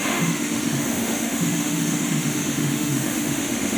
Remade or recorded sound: remade